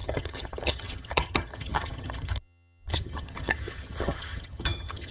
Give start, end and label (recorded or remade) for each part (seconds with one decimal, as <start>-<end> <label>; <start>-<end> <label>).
0.0-5.1 remade